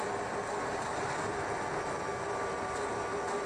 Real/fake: real